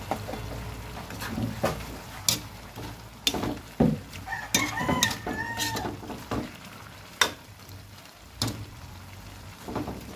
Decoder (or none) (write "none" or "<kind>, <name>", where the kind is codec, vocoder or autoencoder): none